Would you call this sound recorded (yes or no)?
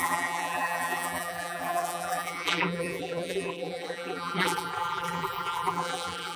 no